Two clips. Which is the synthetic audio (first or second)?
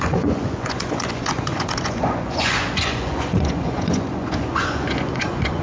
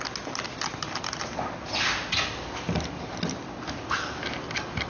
first